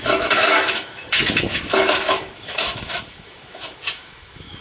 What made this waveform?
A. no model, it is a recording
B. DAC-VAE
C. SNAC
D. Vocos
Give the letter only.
B